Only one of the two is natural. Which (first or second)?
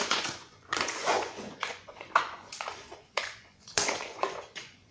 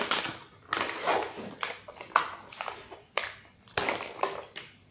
second